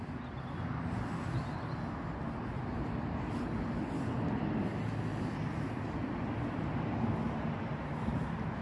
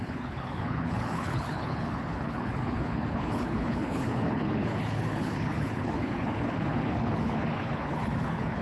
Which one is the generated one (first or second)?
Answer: second